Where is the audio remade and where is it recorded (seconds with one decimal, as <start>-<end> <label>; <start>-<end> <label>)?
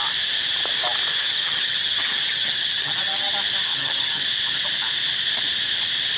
0.0-1.1 recorded; 1.1-3.3 remade; 3.3-3.7 recorded; 3.7-4.2 remade; 4.2-6.2 recorded